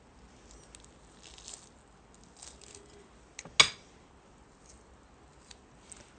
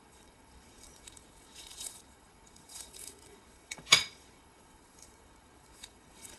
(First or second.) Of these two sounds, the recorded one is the first